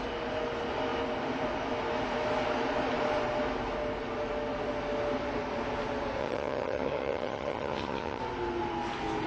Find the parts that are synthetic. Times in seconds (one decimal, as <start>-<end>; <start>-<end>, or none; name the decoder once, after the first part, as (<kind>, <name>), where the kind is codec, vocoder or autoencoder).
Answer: 6.2-8.2 (vocoder, HiFi-GAN)